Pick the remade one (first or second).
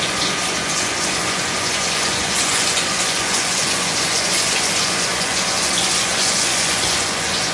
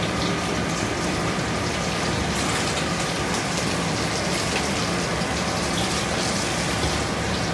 first